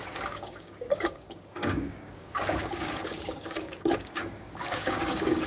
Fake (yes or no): yes